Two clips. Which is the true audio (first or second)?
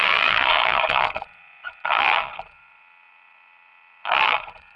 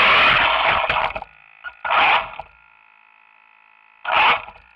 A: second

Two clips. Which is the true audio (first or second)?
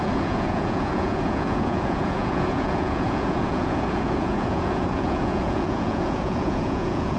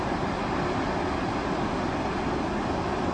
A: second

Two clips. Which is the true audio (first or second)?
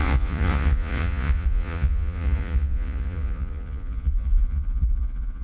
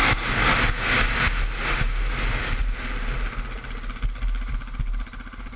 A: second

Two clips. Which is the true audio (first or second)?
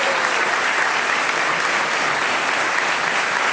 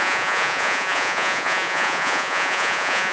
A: first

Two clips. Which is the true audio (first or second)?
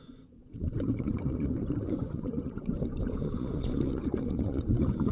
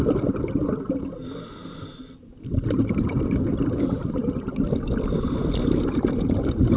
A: second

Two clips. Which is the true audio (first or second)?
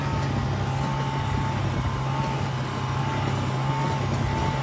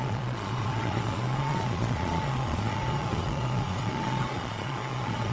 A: first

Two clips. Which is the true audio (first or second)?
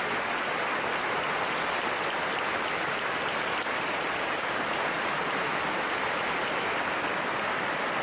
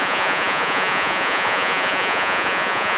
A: first